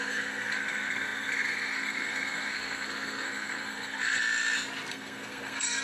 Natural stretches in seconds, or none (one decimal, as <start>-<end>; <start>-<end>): 4.2-4.9

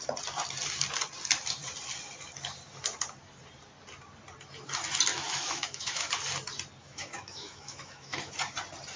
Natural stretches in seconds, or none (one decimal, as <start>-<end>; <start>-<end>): 0.0-5.1; 6.1-6.8; 8.3-9.0

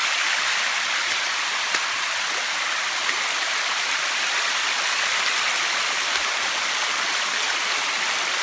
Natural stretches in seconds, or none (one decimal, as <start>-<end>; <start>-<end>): 0.0-8.4

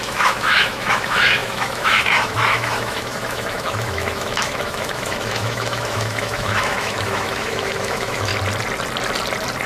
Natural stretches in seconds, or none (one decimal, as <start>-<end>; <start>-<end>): 8.3-9.7

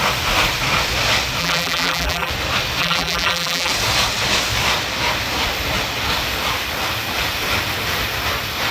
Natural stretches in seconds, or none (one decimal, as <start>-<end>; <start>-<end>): 0.0-1.4; 2.3-2.8; 3.7-8.7

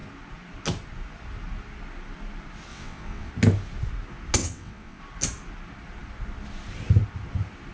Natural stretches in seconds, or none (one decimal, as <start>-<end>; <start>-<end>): 0.0-2.7; 3.3-4.4; 5.0-7.7

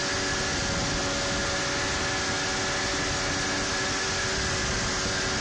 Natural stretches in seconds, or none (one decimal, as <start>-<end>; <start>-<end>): 0.0-5.4